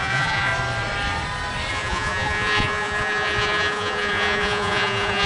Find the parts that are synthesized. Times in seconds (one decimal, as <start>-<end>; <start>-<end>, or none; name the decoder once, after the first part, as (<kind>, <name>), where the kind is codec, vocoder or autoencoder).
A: 0.0-0.5 (vocoder, Vocos); 1.7-5.3